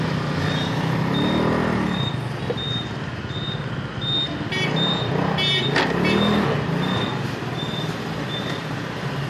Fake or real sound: real